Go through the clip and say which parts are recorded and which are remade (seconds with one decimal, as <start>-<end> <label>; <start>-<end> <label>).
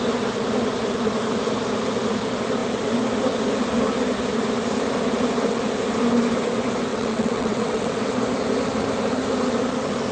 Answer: 0.0-6.9 recorded; 6.9-8.0 remade; 8.0-10.1 recorded